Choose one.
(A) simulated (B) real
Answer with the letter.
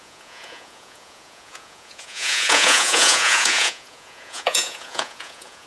A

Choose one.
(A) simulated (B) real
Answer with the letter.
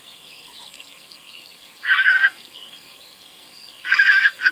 A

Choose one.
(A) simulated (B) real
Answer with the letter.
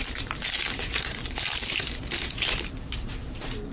A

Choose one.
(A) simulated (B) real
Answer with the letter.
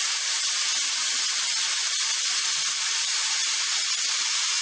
B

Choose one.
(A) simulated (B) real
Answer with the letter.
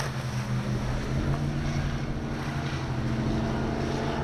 B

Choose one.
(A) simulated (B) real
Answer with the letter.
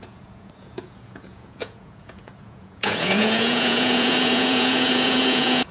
A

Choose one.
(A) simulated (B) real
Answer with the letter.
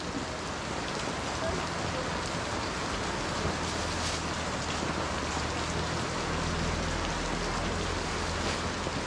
B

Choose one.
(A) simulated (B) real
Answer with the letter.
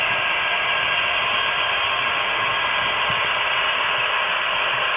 A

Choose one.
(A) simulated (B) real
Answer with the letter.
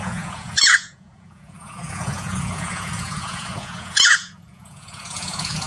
A